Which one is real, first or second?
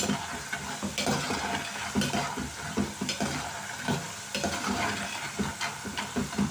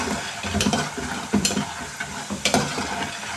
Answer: first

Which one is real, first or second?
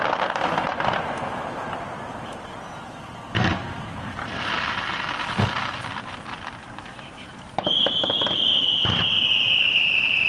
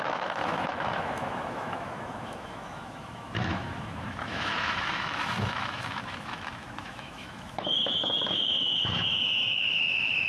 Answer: first